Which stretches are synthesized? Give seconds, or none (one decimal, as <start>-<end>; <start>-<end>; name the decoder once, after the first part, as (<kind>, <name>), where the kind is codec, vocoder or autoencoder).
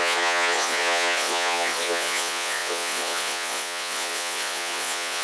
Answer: 0.0-5.2 (vocoder, Vocos)